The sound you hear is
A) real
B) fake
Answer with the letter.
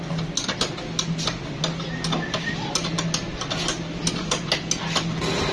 A